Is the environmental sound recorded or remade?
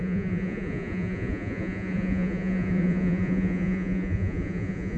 remade